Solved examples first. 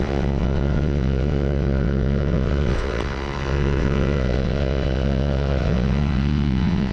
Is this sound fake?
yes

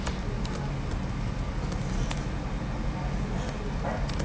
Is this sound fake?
no